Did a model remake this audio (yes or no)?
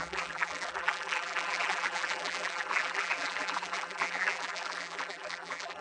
yes